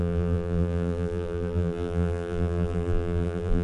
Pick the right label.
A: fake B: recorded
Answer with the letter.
A